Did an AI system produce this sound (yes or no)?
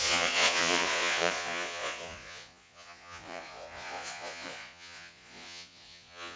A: yes